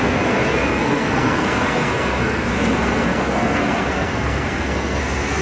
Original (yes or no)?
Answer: no